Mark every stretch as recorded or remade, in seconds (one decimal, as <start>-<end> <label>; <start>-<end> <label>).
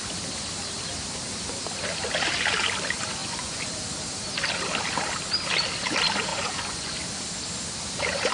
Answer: 0.0-3.2 recorded; 3.2-3.7 remade; 3.7-6.3 recorded; 6.3-6.9 remade; 6.9-8.3 recorded